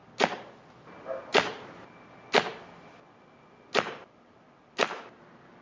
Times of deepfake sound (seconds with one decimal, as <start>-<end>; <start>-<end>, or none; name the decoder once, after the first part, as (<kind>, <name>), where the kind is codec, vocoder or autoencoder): none